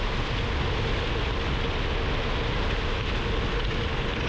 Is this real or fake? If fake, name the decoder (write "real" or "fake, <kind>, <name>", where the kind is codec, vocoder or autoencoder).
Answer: real